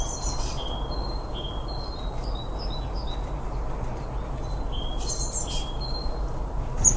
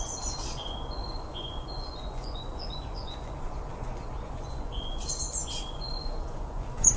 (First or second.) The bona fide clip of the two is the first